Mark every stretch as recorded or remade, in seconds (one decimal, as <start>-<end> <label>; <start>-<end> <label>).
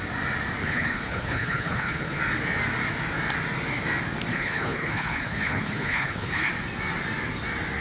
0.0-0.6 recorded; 0.6-2.2 remade; 2.2-4.3 recorded; 4.3-6.5 remade; 6.5-7.8 recorded